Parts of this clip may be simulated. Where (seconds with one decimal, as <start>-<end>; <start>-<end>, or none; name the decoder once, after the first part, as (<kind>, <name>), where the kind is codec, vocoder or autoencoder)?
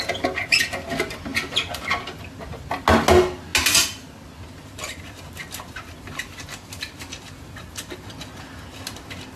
none